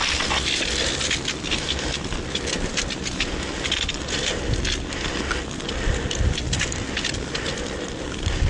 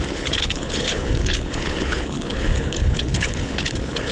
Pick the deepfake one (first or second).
second